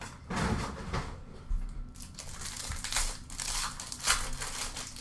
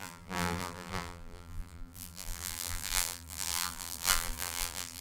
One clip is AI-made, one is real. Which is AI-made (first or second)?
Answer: second